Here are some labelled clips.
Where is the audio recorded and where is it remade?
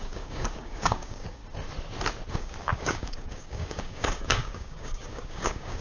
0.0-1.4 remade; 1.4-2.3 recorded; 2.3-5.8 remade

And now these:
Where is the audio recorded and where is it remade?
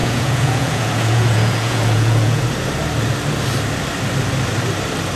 0.0-2.4 remade; 2.4-5.2 recorded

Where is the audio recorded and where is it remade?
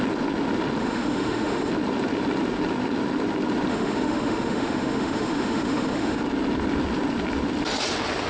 0.0-0.8 recorded; 0.8-1.7 remade; 1.7-3.7 recorded; 3.7-6.2 remade; 6.2-8.3 recorded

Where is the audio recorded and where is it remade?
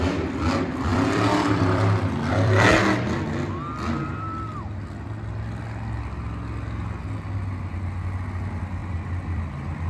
0.0-0.9 recorded; 0.9-2.8 remade; 2.8-8.8 recorded; 8.8-9.5 remade; 9.5-9.9 recorded